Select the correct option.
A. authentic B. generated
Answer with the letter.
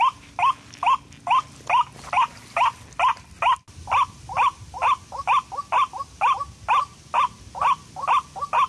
A